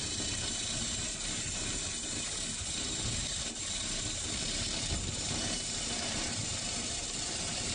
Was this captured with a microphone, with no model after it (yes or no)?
no